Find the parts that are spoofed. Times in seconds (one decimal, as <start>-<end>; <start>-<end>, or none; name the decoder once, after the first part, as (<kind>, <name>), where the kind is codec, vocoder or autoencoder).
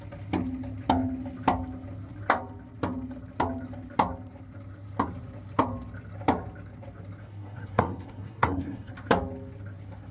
7.2-8.9 (codec, SNAC)